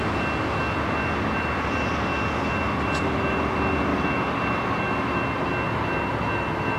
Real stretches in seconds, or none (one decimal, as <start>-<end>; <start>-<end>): 0.0-6.8